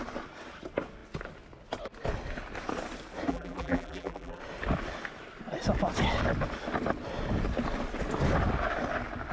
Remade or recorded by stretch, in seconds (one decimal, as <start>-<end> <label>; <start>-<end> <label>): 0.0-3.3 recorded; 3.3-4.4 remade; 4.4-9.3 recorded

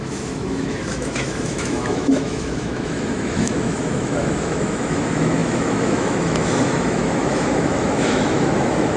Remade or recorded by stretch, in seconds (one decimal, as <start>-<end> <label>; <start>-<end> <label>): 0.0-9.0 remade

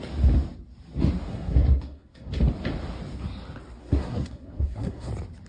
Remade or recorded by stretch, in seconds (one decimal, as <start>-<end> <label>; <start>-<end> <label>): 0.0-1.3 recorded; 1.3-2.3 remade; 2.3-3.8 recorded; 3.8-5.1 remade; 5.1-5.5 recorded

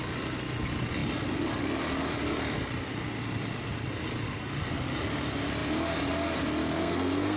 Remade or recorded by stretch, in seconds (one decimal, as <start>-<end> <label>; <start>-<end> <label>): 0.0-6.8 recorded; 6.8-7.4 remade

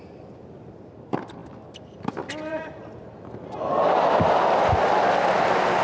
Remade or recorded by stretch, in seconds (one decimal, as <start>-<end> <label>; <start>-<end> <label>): 0.0-5.8 recorded